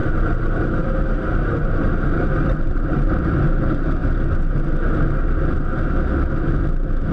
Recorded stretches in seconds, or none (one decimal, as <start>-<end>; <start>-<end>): 3.1-7.1